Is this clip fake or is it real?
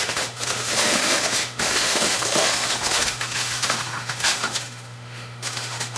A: fake